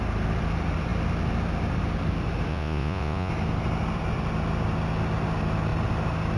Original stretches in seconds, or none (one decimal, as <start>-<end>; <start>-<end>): 0.0-2.5; 3.3-6.4